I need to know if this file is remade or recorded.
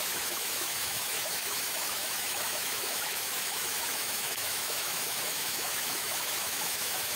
remade